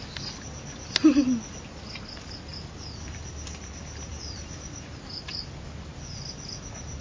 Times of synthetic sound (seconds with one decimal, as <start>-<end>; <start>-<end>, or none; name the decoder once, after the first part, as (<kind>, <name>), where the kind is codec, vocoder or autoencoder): 2.5-5.2 (vocoder, BigVGAN v2)